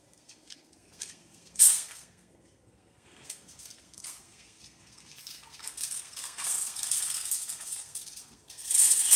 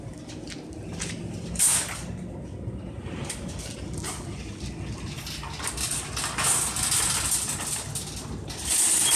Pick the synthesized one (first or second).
first